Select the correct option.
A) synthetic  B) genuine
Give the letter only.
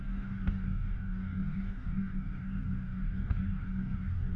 A